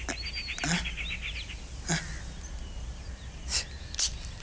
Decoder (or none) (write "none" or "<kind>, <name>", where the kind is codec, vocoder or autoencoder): none